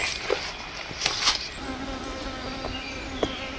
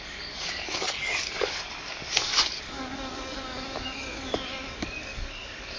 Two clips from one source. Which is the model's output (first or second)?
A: second